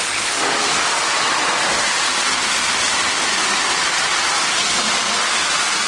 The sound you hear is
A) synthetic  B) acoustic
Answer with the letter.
B